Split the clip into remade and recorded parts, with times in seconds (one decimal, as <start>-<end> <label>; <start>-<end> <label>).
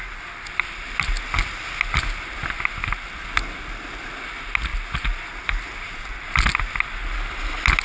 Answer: 0.0-7.8 recorded